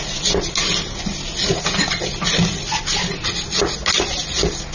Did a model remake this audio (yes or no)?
no